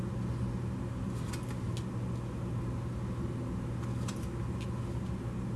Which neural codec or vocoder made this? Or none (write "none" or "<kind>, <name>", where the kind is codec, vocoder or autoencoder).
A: none